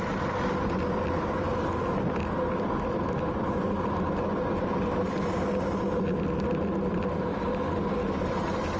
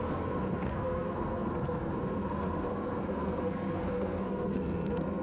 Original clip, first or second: first